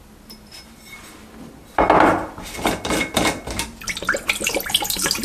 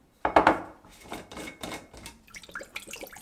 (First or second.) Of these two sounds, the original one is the first